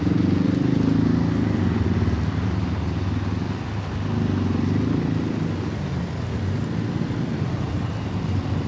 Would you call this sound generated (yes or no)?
no